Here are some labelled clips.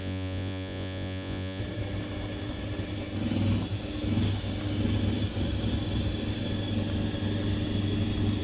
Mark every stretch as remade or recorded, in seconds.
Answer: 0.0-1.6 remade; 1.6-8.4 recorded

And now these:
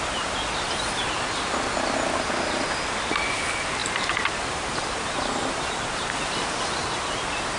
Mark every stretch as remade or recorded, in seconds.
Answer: 0.0-3.8 recorded; 3.8-6.3 remade; 6.3-6.8 recorded; 6.8-7.6 remade

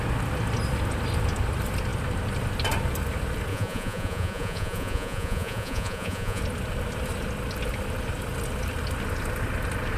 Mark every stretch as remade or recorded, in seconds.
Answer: 0.0-3.5 recorded; 3.5-6.4 remade; 6.4-10.0 recorded

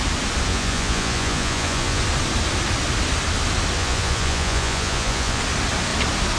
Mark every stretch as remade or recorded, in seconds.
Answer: 0.0-0.5 recorded; 0.5-2.0 remade; 2.0-3.8 recorded; 3.8-5.4 remade; 5.4-6.4 recorded

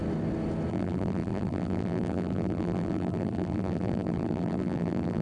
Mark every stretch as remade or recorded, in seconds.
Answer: 0.0-0.7 recorded; 0.7-5.2 remade